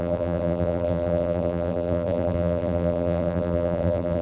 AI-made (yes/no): yes